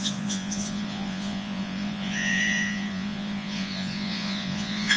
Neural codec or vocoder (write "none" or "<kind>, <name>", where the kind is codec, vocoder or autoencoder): vocoder, Vocos